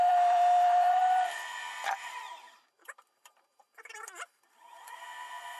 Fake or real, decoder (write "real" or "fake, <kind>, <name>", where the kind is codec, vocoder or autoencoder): fake, vocoder, BigVGAN v2